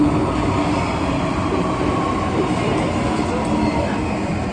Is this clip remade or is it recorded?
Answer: recorded